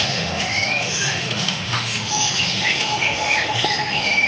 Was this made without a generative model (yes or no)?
no